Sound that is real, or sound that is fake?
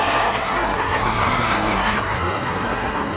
fake